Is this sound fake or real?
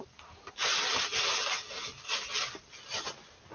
real